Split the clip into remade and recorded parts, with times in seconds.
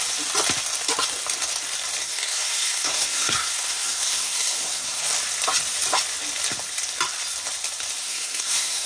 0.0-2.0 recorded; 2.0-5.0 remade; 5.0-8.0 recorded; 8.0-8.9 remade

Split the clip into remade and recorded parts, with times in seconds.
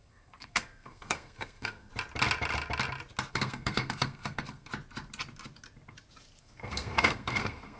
0.0-1.9 remade; 1.9-3.3 recorded; 3.3-4.7 remade; 4.7-6.4 recorded; 6.4-7.8 remade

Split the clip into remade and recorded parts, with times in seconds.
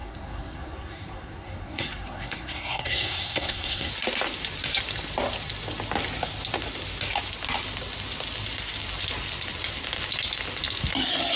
0.0-3.9 remade; 3.9-11.4 recorded